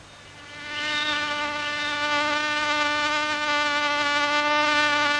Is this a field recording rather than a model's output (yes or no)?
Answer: yes